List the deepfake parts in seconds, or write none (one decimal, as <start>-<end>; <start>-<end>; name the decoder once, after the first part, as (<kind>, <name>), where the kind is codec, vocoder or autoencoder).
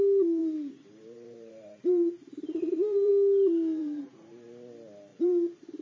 0.4-3.1 (vocoder, BigVGAN v2); 3.8-4.3; 5.1-5.8